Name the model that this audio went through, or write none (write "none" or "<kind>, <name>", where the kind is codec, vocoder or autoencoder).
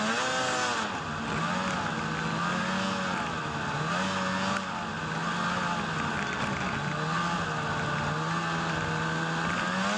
none